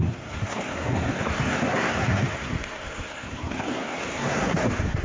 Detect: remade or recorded remade